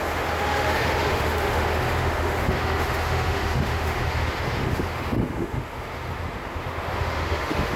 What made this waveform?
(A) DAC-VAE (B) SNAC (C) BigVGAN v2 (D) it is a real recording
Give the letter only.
A